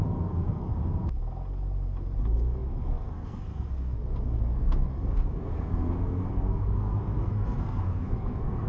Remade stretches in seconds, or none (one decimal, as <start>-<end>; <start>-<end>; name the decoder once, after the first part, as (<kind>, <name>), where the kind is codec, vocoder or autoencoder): 0.0-0.8 (codec, SNAC); 2.2-8.7